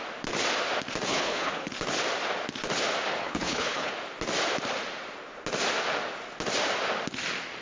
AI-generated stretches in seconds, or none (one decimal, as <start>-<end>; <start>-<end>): 1.1-1.7; 3.2-3.9